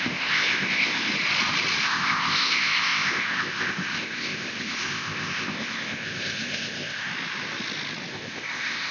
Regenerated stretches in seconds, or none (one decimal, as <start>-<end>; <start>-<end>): 0.0-1.1; 1.8-7.1; 8.1-8.9